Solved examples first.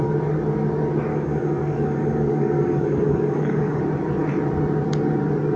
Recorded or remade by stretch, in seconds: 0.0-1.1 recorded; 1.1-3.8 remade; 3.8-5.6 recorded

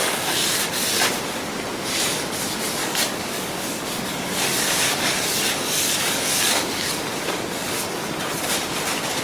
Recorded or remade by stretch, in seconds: 0.0-0.7 remade; 0.7-2.8 recorded; 2.8-7.9 remade; 7.9-9.2 recorded

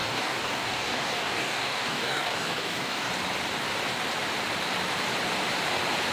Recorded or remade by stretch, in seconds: 0.0-3.1 remade; 3.1-6.1 recorded

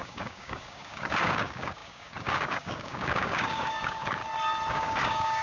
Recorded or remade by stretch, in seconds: 0.0-4.2 remade; 4.2-4.7 recorded; 4.7-5.4 remade

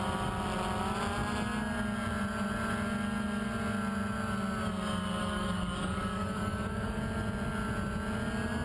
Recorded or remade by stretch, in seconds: 0.0-5.2 recorded; 5.2-7.0 remade; 7.0-8.6 recorded